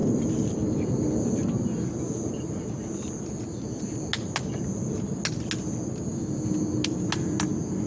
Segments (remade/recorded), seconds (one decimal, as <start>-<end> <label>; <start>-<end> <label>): 0.0-2.0 remade; 2.0-7.9 recorded